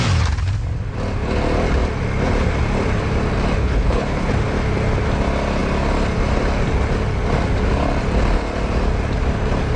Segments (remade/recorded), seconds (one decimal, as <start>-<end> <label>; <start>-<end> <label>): 0.0-3.6 recorded; 3.6-4.3 remade; 4.3-9.8 recorded

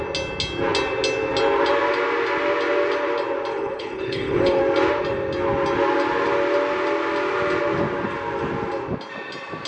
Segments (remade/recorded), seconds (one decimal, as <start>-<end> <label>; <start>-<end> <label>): 0.0-3.5 recorded; 3.5-4.6 remade; 4.6-9.7 recorded